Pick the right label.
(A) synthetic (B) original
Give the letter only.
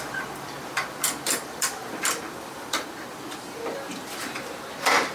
A